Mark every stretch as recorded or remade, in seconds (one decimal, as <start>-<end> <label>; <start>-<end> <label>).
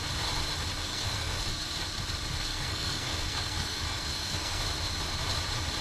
0.0-0.9 recorded; 0.9-1.5 remade; 1.5-2.5 recorded; 2.5-4.6 remade; 4.6-5.8 recorded